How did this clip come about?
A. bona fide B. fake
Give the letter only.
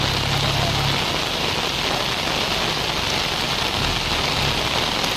A